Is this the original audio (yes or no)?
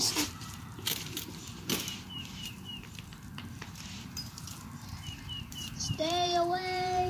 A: no